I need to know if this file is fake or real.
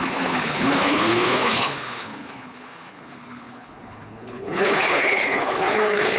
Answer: fake